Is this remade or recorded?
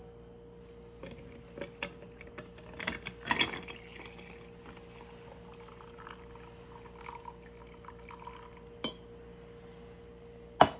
recorded